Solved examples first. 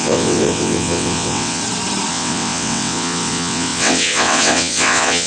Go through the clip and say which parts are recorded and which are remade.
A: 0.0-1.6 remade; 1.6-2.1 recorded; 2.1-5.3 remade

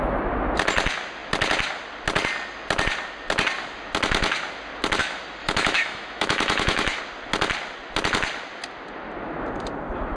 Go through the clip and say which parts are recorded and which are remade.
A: 0.0-5.4 recorded; 5.4-7.0 remade; 7.0-10.2 recorded

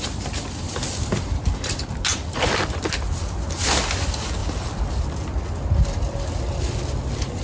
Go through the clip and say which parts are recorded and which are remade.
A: 0.0-7.4 recorded

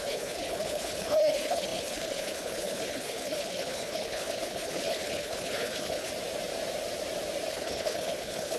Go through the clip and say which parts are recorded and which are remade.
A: 0.0-6.1 remade; 6.1-7.5 recorded; 7.5-8.6 remade